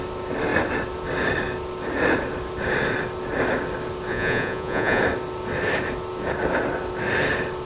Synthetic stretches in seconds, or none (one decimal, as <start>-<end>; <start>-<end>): 4.1-5.0